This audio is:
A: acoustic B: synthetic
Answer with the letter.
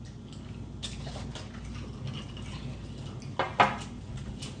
A